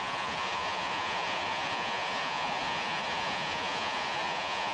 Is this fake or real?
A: fake